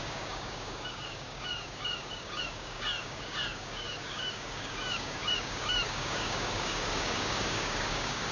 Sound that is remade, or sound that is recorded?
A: remade